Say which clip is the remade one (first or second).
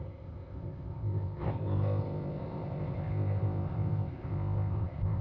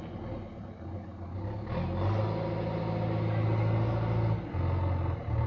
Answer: first